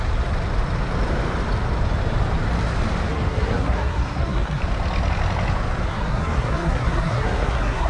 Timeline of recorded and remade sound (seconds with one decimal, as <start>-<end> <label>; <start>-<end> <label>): 0.0-3.1 recorded; 3.1-4.6 remade; 4.6-5.9 recorded; 5.9-7.9 remade